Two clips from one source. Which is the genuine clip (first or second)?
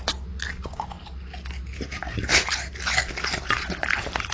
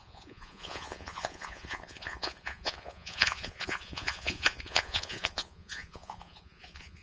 first